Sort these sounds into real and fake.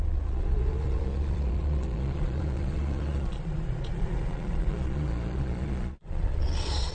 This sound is fake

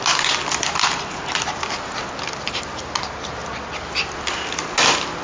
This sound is real